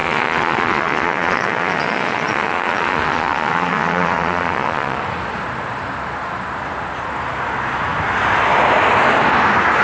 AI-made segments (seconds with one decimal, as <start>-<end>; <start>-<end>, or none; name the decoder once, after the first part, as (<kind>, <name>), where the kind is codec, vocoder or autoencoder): 0.0-5.0 (vocoder, Vocos)